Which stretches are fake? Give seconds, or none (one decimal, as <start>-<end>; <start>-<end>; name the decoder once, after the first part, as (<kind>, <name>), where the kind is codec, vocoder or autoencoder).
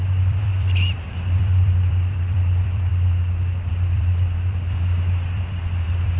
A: 0.0-2.9 (vocoder, BigVGAN v2); 3.7-6.2